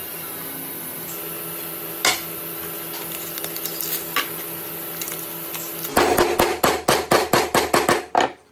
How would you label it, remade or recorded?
recorded